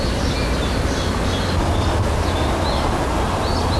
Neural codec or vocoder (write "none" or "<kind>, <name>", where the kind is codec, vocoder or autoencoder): none